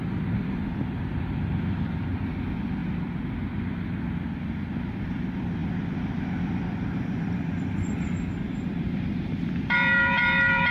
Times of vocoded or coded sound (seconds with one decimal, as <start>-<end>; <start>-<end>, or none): 0.0-2.8; 4.3-5.6; 6.5-10.7